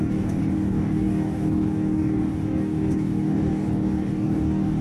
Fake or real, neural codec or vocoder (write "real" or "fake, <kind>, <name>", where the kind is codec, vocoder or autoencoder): fake, codec, DAC